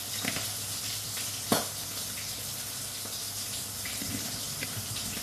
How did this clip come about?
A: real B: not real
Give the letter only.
A